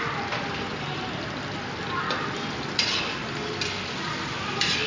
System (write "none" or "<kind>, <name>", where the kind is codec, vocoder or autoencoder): vocoder, BigVGAN v2